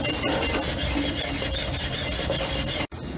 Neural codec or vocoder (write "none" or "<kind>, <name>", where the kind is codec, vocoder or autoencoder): none